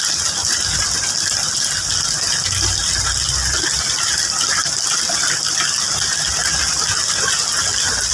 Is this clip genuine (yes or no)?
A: yes